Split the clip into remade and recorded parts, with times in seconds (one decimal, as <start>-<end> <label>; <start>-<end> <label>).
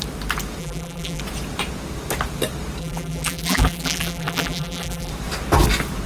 0.0-0.6 recorded; 0.6-1.2 remade; 1.2-2.8 recorded; 2.8-5.1 remade; 5.1-6.1 recorded